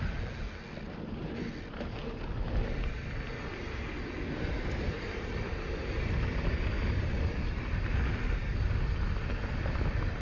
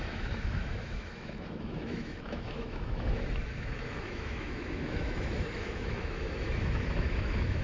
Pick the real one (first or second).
first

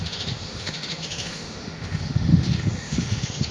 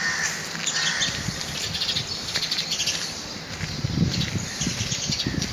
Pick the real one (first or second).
second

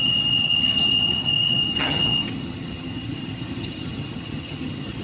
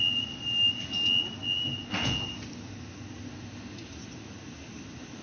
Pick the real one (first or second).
second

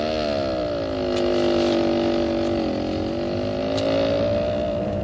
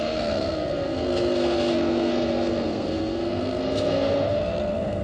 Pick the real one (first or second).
first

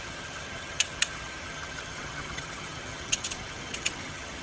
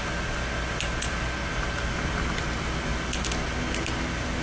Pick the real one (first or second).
second